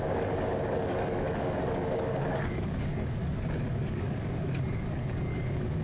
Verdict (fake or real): fake